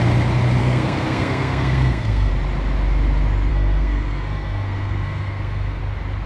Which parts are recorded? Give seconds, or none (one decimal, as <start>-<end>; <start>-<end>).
0.0-0.6; 2.3-3.5; 5.8-6.3